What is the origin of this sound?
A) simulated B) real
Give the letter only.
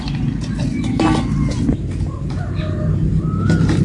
B